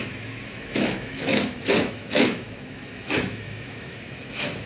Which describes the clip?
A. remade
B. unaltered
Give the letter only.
A